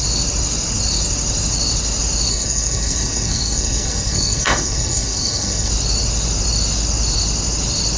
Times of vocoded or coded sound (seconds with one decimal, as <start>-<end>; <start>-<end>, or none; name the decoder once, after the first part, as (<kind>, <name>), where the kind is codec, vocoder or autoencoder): 2.3-5.7 (codec, SNAC)